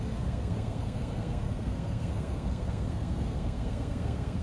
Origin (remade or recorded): remade